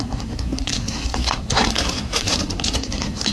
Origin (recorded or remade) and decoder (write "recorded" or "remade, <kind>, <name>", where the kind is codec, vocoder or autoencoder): remade, codec, SNAC